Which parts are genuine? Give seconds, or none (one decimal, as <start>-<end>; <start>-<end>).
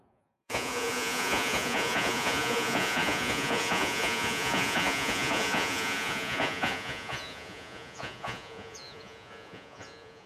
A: none